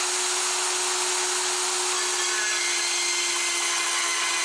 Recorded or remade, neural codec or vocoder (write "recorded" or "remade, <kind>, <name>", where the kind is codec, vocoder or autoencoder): recorded